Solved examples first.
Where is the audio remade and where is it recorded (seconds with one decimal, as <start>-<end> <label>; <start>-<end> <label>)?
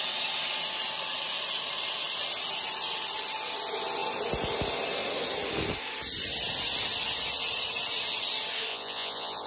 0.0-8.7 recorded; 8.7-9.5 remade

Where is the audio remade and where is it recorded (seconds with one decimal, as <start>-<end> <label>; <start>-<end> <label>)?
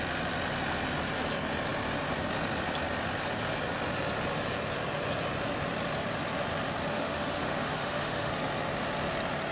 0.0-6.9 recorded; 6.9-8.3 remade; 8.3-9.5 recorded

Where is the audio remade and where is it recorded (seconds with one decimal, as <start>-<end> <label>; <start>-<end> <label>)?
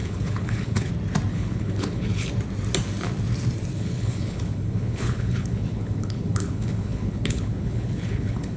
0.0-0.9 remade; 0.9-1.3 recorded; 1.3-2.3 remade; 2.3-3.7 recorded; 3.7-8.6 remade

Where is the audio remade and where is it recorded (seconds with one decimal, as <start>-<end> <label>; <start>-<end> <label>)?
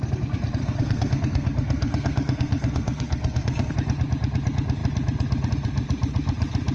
0.0-0.6 recorded; 0.6-3.7 remade; 3.7-6.7 recorded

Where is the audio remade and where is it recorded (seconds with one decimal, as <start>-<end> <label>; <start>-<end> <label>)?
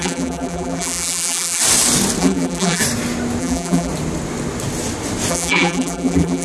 0.0-1.6 remade; 1.6-2.2 recorded; 2.2-2.8 remade; 2.8-3.4 recorded; 3.4-3.9 remade; 3.9-5.3 recorded; 5.3-6.4 remade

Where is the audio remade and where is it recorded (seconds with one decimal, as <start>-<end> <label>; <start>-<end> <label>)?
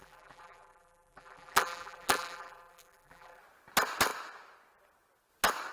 0.0-3.4 remade; 3.4-5.7 recorded